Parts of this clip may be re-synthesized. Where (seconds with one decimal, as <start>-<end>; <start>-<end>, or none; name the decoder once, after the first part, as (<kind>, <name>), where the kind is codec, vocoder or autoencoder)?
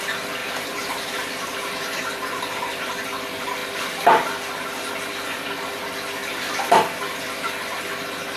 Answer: 0.4-2.9 (vocoder, BigVGAN v2)